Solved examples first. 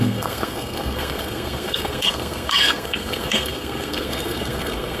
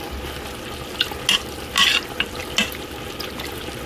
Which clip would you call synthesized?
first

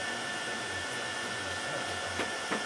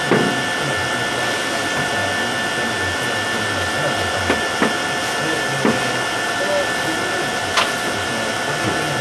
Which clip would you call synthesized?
first